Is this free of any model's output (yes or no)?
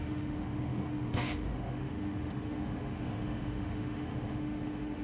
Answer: no